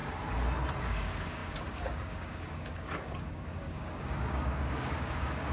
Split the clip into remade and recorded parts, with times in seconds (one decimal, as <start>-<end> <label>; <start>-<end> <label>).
0.0-0.8 recorded; 0.8-5.5 remade